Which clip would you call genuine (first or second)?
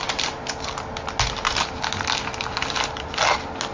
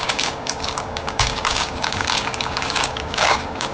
first